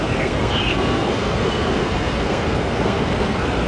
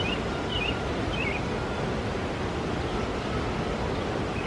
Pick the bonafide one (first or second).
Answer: second